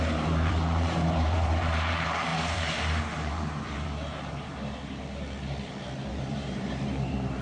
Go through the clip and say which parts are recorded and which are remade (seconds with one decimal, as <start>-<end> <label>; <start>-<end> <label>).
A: 0.0-5.0 remade; 5.0-6.1 recorded; 6.1-7.4 remade